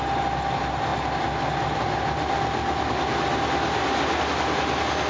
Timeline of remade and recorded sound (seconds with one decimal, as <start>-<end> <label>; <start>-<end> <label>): 0.0-5.1 recorded

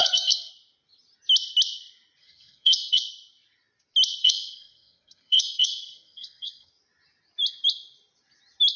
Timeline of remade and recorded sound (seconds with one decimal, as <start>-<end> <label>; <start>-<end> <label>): 0.0-0.5 remade; 0.5-2.2 recorded; 2.2-3.0 remade; 3.0-4.2 recorded; 4.2-6.7 remade; 6.7-8.8 recorded

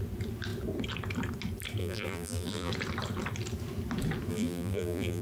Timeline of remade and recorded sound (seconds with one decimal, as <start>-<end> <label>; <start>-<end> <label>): 0.0-1.8 recorded; 1.8-2.7 remade; 2.7-4.3 recorded; 4.3-5.2 remade